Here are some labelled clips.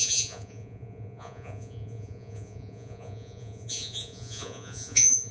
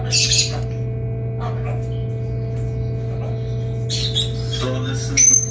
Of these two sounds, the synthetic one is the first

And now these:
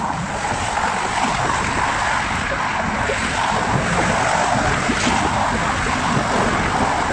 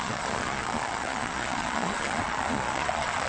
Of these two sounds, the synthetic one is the second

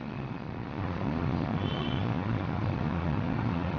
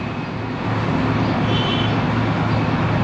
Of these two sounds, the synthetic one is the first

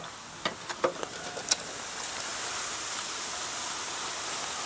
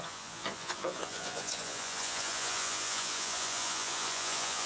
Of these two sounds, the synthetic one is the second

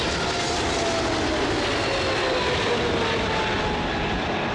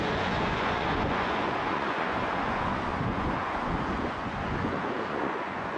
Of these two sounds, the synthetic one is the second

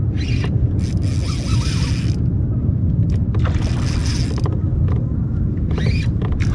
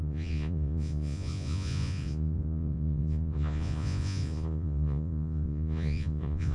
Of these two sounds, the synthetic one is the second